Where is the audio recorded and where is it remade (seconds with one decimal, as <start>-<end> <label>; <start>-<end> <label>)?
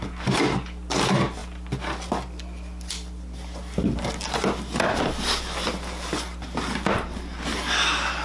0.0-8.2 recorded